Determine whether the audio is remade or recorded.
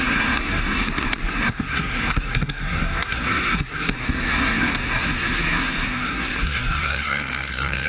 remade